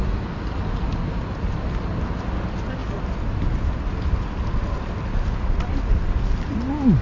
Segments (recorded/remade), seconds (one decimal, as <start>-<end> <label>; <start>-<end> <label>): 0.0-7.0 recorded